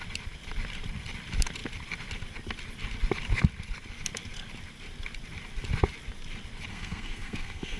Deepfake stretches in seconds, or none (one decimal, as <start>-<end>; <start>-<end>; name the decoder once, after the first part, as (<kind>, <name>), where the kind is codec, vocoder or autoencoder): 6.7-7.8 (codec, SNAC)